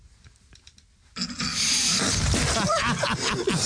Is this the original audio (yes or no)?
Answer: yes